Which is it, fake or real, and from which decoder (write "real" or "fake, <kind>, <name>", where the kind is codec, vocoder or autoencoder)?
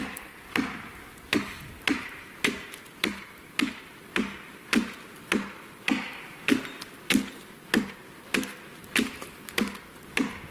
real